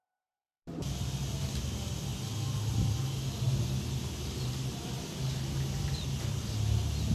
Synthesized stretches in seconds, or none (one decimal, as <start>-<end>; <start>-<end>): none

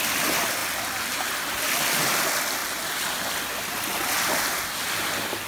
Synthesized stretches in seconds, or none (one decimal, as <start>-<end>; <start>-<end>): none

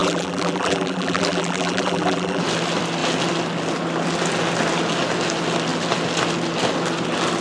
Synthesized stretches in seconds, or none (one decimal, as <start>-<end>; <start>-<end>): 0.0-2.4